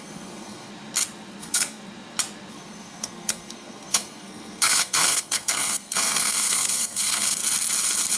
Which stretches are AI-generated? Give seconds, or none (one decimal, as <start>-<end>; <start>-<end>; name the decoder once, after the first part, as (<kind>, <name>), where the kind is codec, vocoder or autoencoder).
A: 0.0-0.7 (codec, SNAC); 1.4-1.8; 2.5-7.4